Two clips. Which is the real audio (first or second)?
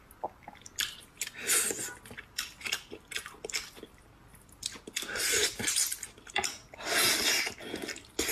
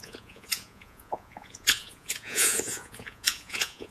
first